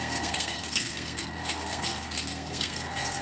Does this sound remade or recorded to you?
remade